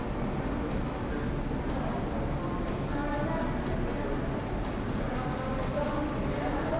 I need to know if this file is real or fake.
real